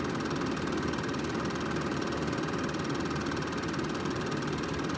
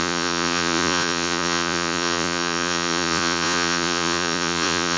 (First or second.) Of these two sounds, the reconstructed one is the second